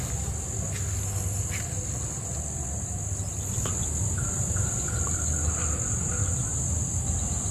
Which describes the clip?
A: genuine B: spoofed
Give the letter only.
A